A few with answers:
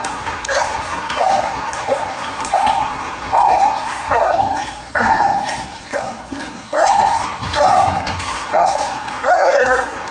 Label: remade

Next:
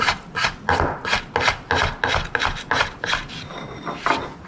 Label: recorded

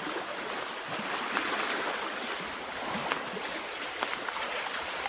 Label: recorded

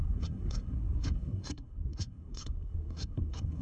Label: remade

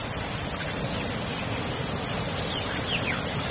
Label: recorded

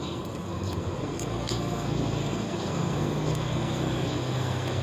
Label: remade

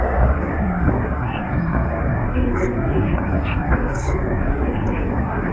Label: remade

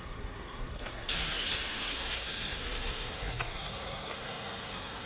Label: remade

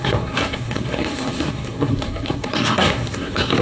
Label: remade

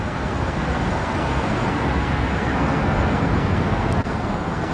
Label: remade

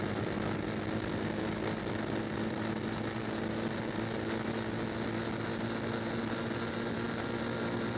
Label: recorded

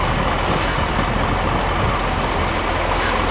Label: recorded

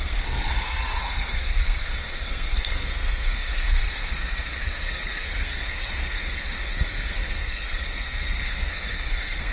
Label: remade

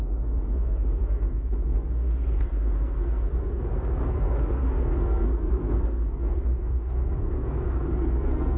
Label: remade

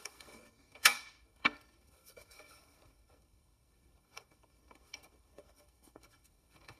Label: remade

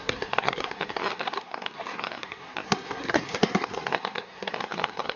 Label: remade